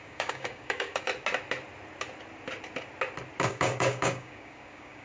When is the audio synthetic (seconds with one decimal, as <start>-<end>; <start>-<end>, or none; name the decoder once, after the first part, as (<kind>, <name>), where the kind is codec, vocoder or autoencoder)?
0.0-1.1 (codec, DAC); 3.4-5.0